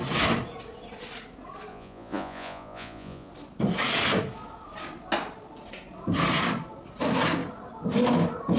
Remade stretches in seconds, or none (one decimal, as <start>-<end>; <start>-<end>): 1.7-3.3